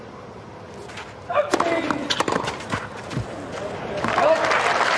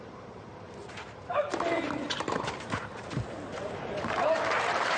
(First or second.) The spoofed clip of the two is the second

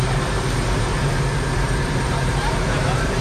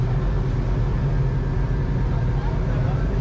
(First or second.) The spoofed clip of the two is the first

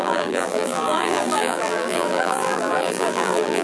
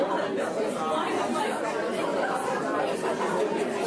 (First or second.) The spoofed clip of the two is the first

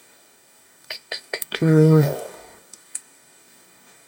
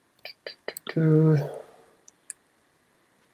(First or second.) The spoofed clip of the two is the first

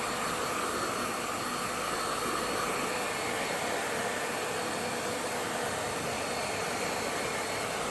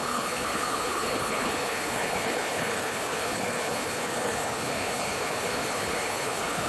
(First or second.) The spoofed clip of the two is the second